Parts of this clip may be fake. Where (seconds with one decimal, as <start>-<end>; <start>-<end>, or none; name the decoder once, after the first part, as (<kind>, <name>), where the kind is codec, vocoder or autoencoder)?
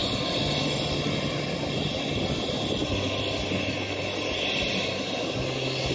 none